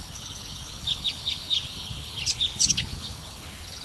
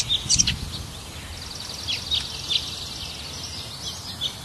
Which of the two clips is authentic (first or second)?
second